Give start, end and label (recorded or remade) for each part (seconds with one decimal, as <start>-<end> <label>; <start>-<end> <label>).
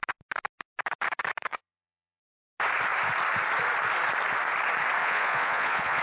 0.0-1.5 recorded; 1.5-2.2 remade; 2.2-5.0 recorded; 5.0-6.0 remade